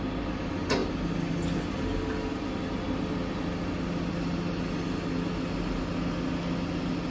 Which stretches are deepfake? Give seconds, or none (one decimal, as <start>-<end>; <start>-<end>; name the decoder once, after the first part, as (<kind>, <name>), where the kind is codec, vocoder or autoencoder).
none